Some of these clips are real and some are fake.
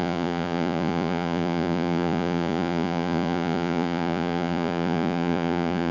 fake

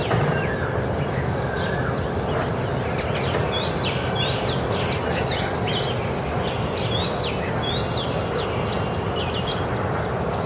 real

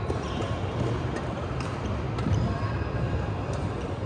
real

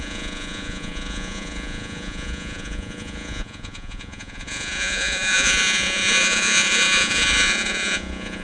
fake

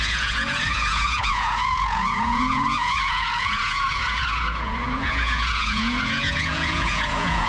fake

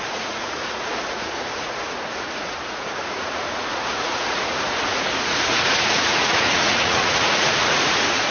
fake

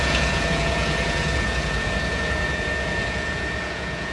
fake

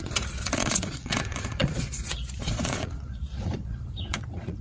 fake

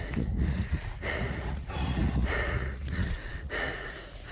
fake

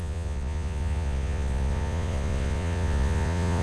fake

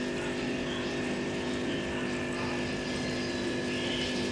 real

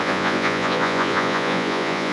fake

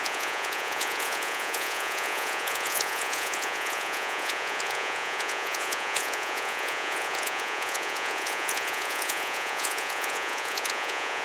fake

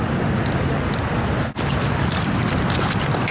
real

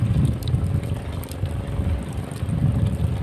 real